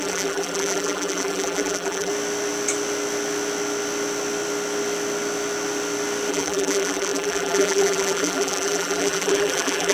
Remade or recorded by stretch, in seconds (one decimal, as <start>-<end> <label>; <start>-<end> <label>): 0.0-2.1 remade; 2.1-6.3 recorded; 6.3-9.9 remade